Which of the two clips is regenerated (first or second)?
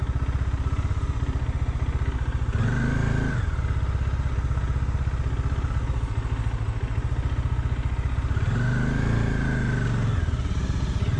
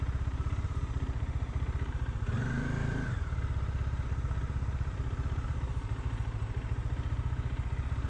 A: second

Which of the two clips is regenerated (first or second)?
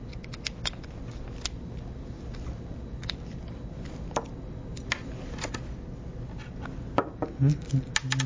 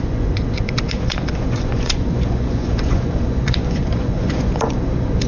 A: second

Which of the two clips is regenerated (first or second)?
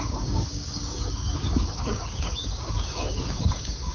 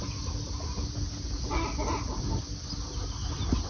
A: first